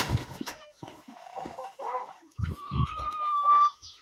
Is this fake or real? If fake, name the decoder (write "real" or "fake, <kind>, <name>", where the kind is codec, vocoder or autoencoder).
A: fake, autoencoder, DAC-VAE